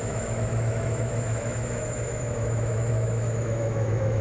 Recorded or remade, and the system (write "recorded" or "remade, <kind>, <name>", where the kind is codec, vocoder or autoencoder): remade, autoencoder, DAC-VAE